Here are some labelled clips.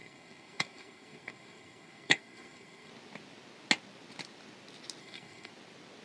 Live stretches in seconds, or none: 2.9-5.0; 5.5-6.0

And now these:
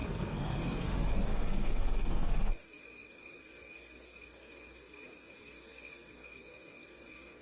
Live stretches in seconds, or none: none

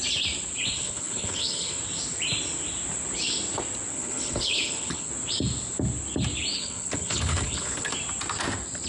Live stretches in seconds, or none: 0.0-0.8; 1.8-3.9; 5.1-6.5; 7.9-8.9

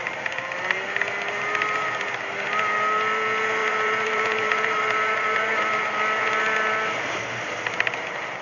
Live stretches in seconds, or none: 1.0-3.6; 5.9-8.4

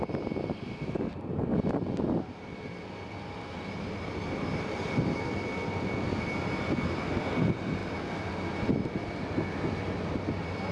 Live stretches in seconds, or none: 0.0-10.7

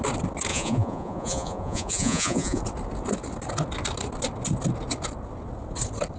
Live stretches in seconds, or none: 0.0-0.5; 2.6-6.2